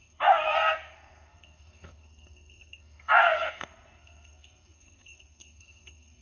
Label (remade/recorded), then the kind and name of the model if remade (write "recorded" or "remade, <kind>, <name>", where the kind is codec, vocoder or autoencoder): remade, codec, SNAC